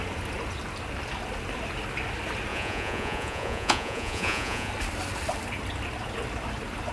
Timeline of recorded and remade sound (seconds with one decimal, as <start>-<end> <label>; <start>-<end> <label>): 0.0-2.5 recorded; 2.5-4.7 remade; 4.7-6.9 recorded